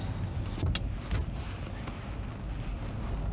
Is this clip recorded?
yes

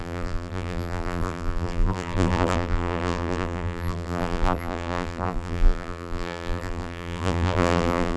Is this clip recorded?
no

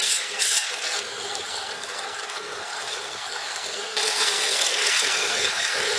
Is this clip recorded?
no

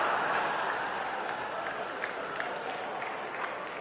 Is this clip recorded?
yes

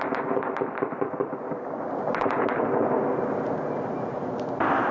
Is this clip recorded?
yes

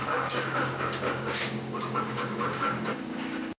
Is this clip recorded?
no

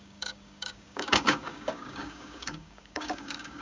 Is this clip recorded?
no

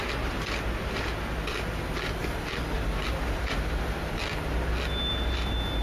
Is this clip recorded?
yes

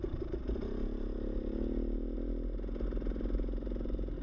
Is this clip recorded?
yes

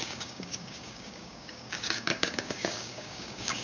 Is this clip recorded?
no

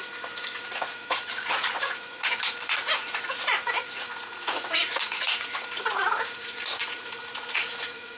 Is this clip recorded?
no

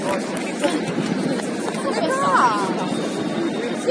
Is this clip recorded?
yes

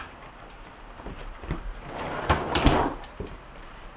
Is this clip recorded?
no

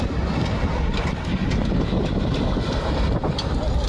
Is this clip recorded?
yes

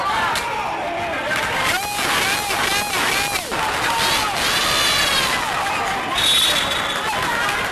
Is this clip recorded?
yes